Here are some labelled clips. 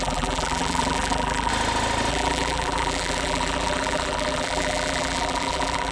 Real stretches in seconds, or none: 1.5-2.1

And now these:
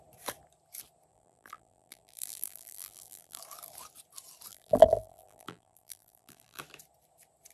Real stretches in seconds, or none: 0.0-1.1; 3.4-4.5; 6.6-7.5

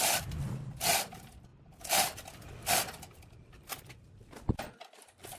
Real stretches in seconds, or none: 0.0-5.4